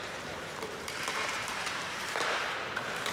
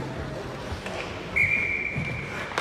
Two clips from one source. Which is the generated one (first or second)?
first